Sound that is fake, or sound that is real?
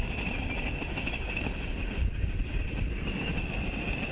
real